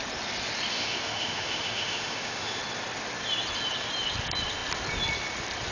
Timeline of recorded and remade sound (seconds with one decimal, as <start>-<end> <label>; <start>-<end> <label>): 0.0-0.7 recorded; 0.7-2.6 remade; 2.6-5.7 recorded